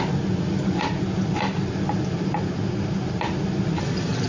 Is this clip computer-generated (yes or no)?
no